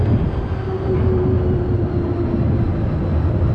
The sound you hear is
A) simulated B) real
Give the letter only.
B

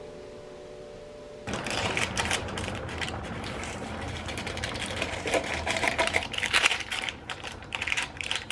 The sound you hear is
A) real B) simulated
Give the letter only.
B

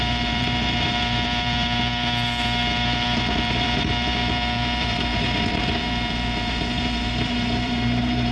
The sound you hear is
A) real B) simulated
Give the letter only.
B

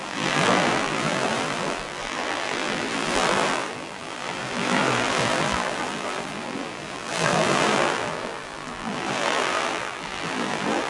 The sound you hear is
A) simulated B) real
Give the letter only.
A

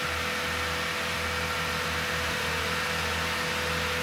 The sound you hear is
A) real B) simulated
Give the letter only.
A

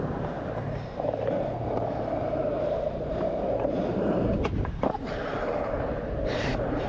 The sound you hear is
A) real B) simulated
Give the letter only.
B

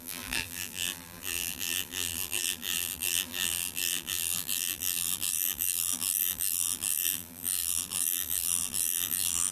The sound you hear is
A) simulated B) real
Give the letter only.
A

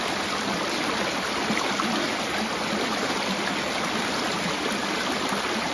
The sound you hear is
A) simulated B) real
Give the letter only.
A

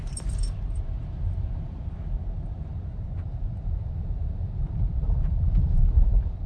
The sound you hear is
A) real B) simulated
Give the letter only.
B